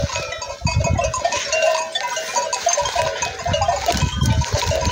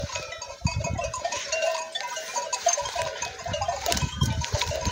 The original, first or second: first